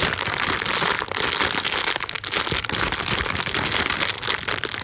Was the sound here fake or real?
real